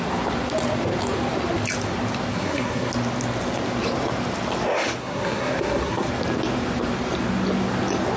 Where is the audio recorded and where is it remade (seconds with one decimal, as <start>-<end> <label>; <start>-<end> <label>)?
0.0-2.3 recorded; 2.3-2.9 remade; 2.9-5.0 recorded; 5.0-6.1 remade; 6.1-8.2 recorded